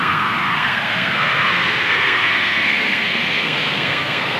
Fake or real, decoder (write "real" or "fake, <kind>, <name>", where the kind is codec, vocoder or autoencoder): fake, codec, SNAC